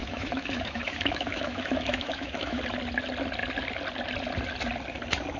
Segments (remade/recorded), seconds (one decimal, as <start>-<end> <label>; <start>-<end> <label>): 0.0-2.6 remade; 2.6-5.4 recorded